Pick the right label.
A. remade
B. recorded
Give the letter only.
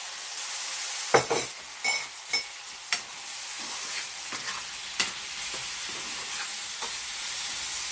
B